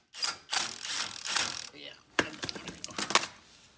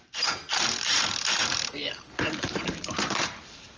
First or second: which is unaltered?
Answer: first